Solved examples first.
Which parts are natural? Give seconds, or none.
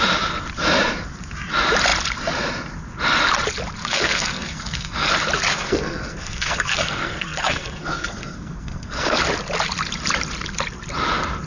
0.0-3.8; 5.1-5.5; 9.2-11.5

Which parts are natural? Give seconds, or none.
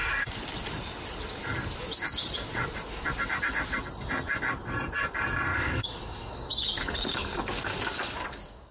0.0-5.5